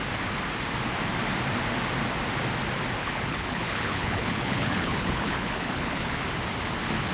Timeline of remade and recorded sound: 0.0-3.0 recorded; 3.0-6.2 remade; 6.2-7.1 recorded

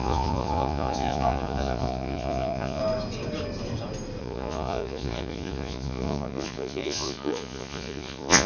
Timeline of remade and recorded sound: 0.0-2.8 remade; 2.8-4.2 recorded; 4.2-8.5 remade